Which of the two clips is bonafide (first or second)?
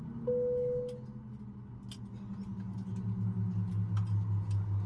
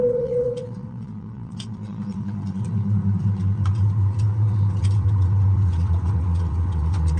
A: first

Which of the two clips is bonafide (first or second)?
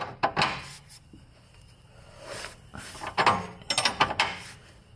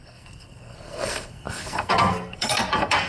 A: first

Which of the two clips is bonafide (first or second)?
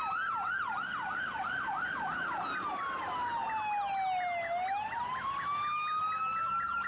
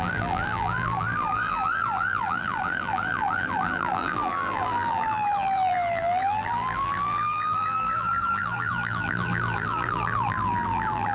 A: first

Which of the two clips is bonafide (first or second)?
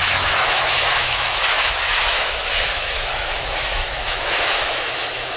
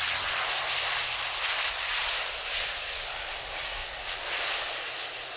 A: second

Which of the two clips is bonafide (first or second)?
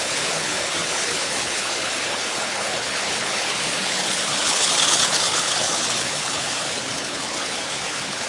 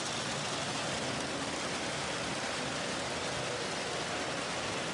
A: second